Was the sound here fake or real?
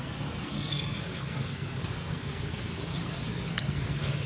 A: fake